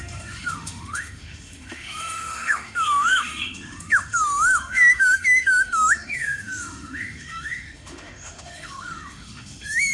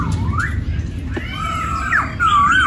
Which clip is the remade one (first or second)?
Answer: first